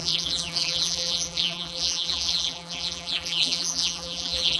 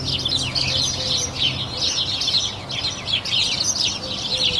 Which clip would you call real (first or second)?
second